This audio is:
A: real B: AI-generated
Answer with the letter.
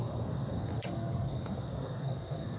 B